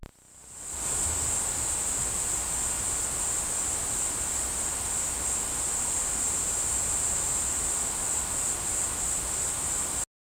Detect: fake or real real